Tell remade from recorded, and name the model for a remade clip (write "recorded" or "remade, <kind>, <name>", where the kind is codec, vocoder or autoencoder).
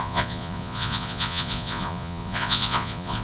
remade, vocoder, Vocos